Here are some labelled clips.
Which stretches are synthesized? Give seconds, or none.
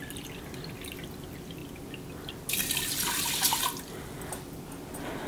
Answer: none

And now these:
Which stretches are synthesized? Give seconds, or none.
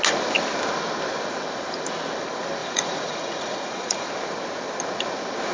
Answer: 2.6-4.1 (vocoder, Vocos)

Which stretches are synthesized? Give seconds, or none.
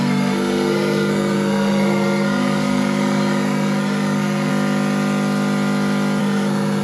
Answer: 0.0-4.5 (codec, SNAC); 6.2-6.8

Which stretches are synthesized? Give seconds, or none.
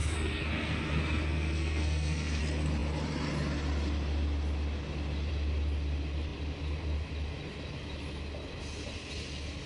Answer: 0.0-2.4 (codec, SNAC)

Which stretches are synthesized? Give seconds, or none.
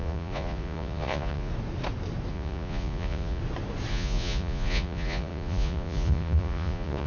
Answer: 0.0-1.5 (vocoder, Vocos); 2.3-3.4; 3.9-7.1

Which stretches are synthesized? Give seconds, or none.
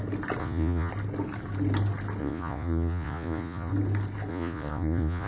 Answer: 0.4-0.9 (vocoder, Vocos); 2.2-3.7; 4.3-5.3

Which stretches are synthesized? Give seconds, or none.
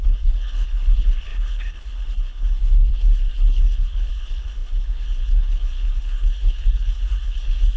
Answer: 0.0-7.8 (codec, HILCodec)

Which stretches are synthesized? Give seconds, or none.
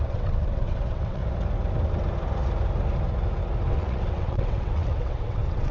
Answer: 0.0-1.2 (vocoder, WaveNeXt); 3.7-5.7